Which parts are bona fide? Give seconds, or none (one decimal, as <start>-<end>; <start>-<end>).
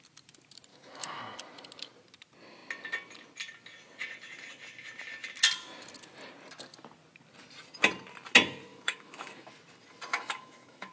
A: 0.0-0.7; 1.2-8.7; 9.5-10.1